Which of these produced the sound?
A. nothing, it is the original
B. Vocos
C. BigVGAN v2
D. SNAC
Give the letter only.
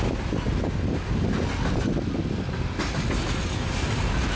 A